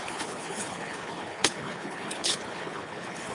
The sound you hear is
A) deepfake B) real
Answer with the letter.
A